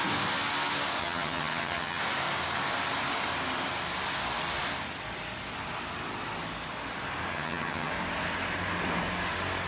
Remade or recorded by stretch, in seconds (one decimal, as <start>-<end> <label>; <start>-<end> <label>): 0.0-1.0 recorded; 1.0-2.0 remade; 2.0-7.3 recorded; 7.3-7.9 remade; 7.9-9.7 recorded